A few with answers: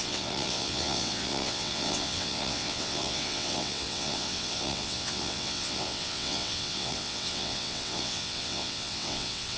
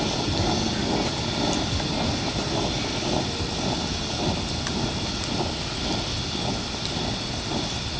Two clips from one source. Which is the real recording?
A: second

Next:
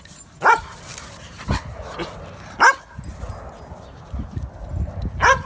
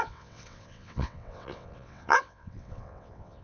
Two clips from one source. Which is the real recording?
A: first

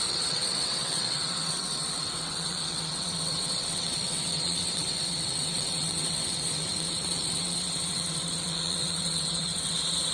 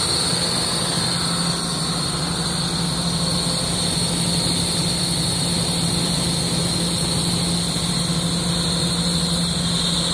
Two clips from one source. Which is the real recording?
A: second